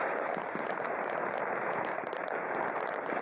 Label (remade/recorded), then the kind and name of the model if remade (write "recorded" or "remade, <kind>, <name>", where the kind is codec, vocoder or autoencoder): recorded